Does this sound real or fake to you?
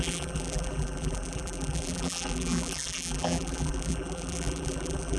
fake